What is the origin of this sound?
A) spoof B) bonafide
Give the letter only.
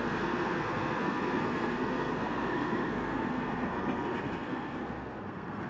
A